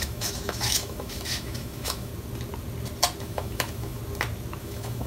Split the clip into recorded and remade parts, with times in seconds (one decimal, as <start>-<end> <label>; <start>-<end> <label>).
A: 0.0-2.1 remade; 2.1-3.2 recorded; 3.2-4.0 remade; 4.0-4.6 recorded; 4.6-5.1 remade